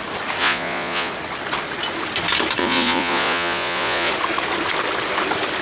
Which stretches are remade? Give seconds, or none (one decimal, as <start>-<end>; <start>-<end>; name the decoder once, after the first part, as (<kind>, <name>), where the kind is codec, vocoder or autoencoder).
0.4-1.1 (vocoder, Vocos); 2.6-4.1